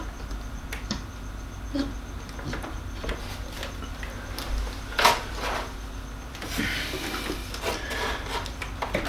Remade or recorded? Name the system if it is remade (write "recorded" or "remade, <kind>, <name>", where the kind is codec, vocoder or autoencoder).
recorded